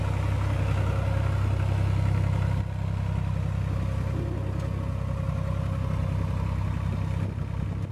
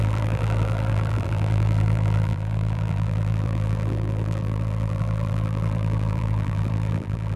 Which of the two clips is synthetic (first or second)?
second